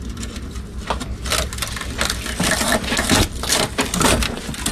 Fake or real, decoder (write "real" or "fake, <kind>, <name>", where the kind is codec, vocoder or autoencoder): real